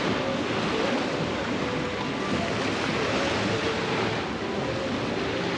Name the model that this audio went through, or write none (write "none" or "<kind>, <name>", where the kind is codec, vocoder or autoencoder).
none